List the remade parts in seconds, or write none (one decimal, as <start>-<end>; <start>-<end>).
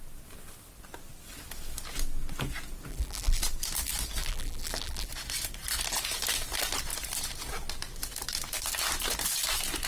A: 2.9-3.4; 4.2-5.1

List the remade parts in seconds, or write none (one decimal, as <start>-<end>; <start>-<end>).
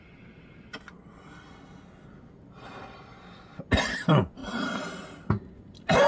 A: 4.4-4.9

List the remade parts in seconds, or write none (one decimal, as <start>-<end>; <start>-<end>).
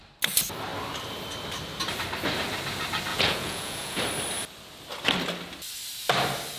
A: 3.1-4.0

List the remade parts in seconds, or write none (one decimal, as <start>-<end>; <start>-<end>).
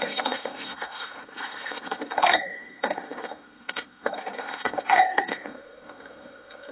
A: 0.0-6.7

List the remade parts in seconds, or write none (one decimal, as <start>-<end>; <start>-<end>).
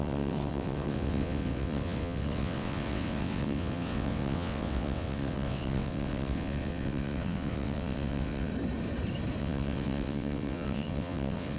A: 0.0-8.5; 9.4-11.6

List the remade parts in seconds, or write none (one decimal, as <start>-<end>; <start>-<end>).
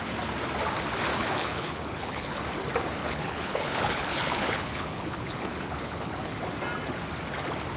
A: 1.1-2.4; 3.0-6.4